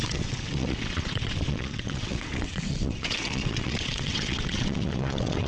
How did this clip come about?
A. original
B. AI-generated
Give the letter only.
B